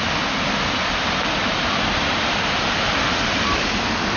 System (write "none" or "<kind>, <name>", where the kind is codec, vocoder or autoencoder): none